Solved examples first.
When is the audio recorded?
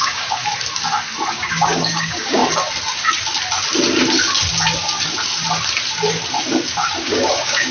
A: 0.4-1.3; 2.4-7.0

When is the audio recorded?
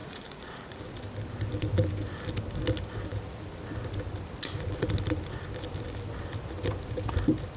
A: 0.8-7.6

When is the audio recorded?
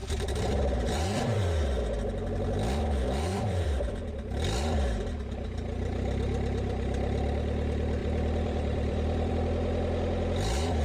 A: 1.4-3.3; 3.9-8.0; 9.3-10.8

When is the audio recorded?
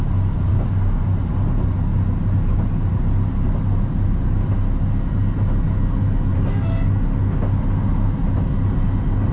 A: 0.0-9.3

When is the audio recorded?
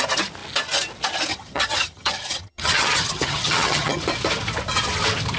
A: 0.0-1.3; 4.0-5.4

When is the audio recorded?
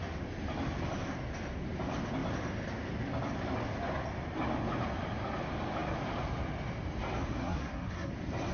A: 0.0-7.3; 8.1-8.5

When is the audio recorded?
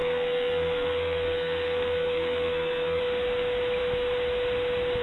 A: 3.0-5.0